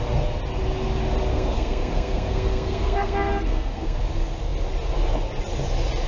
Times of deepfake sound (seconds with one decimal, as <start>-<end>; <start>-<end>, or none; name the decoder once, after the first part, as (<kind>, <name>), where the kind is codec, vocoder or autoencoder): 1.3-4.0 (codec, SNAC)